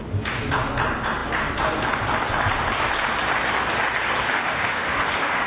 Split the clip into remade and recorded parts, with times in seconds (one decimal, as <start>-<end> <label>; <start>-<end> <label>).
0.0-4.3 recorded; 4.3-5.5 remade